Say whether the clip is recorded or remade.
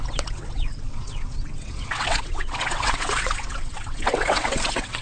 remade